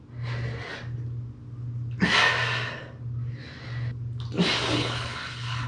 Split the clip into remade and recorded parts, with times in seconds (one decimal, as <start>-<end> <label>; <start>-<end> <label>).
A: 0.0-4.7 recorded; 4.7-5.7 remade